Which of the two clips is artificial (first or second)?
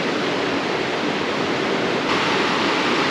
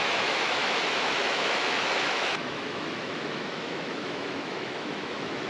second